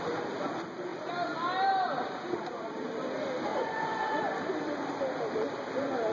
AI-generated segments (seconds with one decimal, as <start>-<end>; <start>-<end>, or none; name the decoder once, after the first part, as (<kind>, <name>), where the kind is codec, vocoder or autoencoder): 3.5-4.2 (vocoder, Vocos)